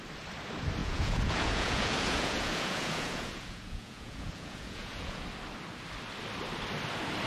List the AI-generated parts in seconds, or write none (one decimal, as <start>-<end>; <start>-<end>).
0.8-5.2